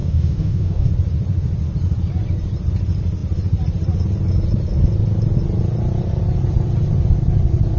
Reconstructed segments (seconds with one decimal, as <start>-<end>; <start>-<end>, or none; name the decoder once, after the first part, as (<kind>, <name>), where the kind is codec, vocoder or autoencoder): 0.0-0.9 (codec, DAC)